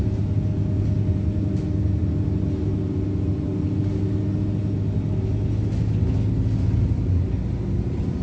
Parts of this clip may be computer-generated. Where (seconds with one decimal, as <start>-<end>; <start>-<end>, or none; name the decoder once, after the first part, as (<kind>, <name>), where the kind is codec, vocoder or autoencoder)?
none